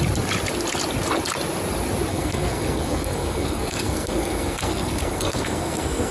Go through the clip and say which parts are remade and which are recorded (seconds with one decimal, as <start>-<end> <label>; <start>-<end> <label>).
0.0-2.1 recorded; 2.1-6.1 remade